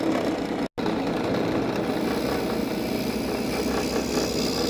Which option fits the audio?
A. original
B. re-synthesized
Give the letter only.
A